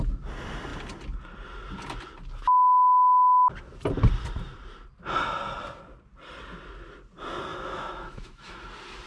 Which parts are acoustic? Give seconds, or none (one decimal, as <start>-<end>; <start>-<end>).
0.0-7.5; 8.6-9.1